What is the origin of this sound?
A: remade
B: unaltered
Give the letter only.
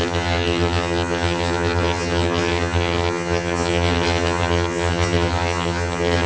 A